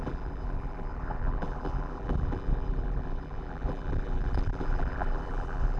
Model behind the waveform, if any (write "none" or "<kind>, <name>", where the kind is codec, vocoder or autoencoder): vocoder, BigVGAN v2